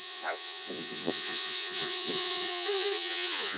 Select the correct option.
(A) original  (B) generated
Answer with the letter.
B